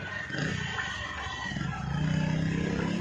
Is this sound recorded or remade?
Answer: recorded